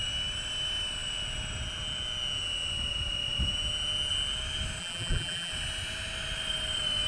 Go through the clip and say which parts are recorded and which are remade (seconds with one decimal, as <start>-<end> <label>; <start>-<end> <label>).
0.0-4.8 recorded; 4.8-5.5 remade; 5.5-7.1 recorded